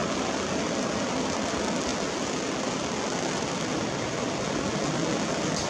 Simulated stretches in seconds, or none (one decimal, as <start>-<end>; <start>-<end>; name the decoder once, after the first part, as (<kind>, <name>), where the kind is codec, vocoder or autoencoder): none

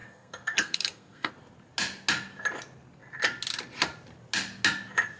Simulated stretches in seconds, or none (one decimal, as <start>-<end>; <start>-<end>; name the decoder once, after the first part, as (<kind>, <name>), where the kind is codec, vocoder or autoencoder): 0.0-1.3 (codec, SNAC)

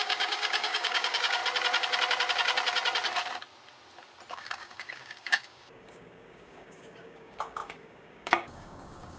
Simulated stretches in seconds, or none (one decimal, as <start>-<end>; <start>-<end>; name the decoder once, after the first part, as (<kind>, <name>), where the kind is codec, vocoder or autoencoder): 0.0-1.4 (codec, DAC); 4.3-9.2

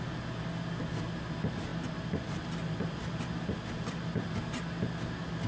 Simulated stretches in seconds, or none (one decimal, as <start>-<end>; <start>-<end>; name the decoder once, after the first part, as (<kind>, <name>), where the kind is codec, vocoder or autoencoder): 1.7-3.2 (vocoder, BigVGAN v2)

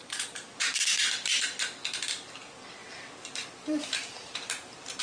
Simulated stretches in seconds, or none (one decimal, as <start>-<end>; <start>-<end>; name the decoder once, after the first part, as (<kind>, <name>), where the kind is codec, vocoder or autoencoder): 0.0-1.8 (vocoder, BigVGAN v2); 2.8-5.0

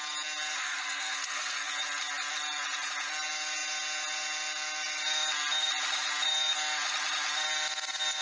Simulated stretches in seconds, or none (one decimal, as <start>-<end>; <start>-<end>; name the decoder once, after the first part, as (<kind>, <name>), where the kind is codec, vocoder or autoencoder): 0.6-1.7 (codec, SNAC)

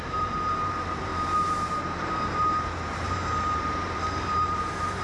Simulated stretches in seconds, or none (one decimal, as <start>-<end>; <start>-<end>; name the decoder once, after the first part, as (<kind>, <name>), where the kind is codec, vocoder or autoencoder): 0.0-5.0 (vocoder, BigVGAN v2)

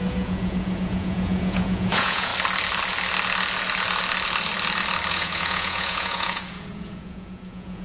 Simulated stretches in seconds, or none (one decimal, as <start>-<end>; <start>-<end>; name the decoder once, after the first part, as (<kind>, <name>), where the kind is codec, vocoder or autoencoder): 0.0-2.3 (vocoder, Vocos); 5.1-7.8